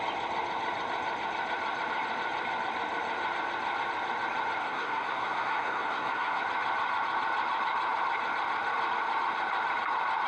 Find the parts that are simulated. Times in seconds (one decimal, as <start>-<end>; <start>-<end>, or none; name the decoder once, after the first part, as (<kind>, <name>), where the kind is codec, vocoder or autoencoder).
4.6-6.4 (codec, SNAC)